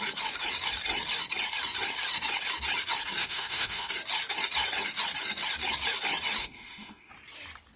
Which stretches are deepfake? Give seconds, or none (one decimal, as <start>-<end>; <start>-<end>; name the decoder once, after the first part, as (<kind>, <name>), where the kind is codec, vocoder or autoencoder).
3.2-3.9 (autoencoder, DAC-VAE); 6.4-7.1